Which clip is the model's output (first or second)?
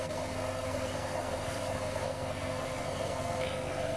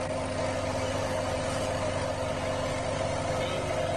first